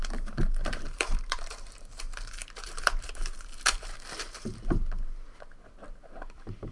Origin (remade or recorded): remade